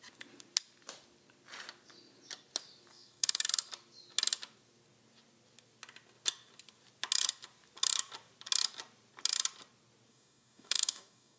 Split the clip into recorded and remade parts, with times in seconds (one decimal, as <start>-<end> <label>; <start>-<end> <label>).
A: 0.0-2.9 recorded; 2.9-3.4 remade; 3.4-10.1 recorded; 10.1-11.4 remade